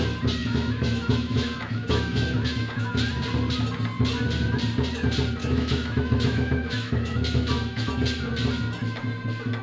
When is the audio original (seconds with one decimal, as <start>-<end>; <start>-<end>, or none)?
0.0-0.4; 2.9-5.4; 7.9-9.6